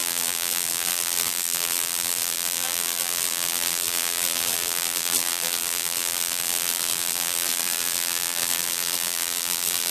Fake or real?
fake